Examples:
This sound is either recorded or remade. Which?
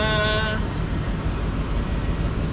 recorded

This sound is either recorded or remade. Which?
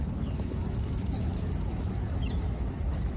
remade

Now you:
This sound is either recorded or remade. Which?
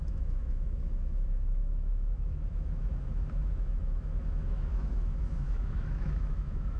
remade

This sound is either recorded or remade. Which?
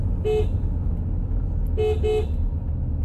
recorded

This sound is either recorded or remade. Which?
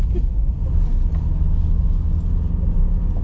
recorded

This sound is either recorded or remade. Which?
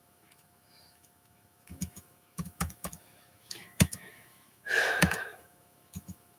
remade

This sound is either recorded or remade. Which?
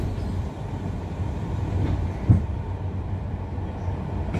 remade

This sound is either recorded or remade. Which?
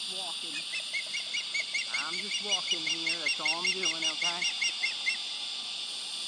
recorded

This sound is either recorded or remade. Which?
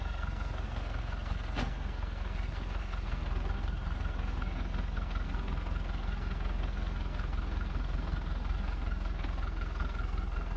remade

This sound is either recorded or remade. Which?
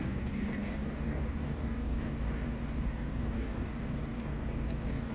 remade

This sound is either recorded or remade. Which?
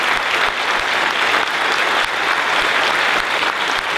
recorded